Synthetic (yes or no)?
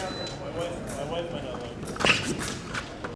no